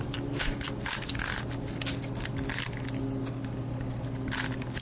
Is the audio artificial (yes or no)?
no